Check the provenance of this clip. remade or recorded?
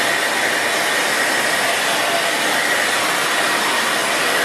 recorded